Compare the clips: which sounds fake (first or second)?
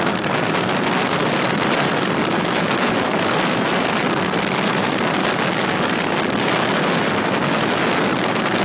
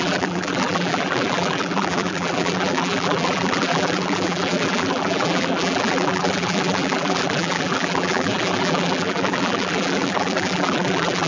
second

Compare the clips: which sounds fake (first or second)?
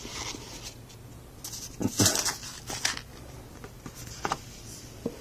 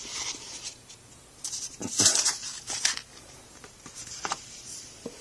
second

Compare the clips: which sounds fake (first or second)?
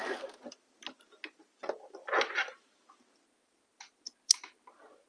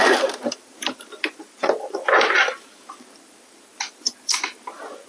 second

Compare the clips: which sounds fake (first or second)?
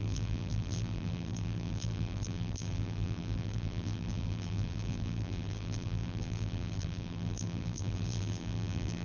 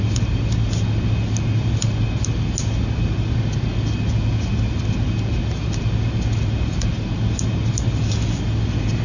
first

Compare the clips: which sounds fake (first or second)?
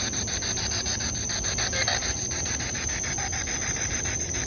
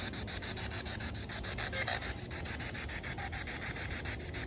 first